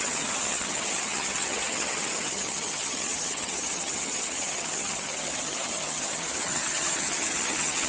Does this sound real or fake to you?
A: fake